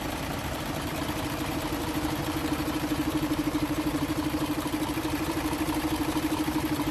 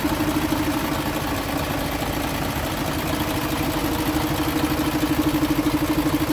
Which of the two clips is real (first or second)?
second